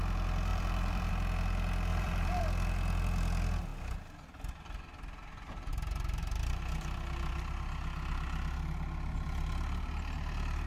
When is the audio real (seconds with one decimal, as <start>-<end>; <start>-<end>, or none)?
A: 0.0-0.5; 1.1-1.9; 2.4-5.7; 6.6-10.7

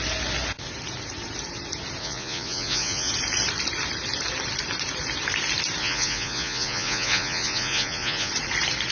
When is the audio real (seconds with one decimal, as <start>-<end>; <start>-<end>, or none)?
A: 0.0-2.0; 3.1-5.8; 8.3-8.9